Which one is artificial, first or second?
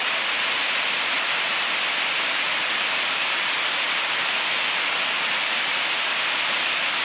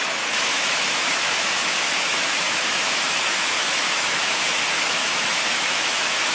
second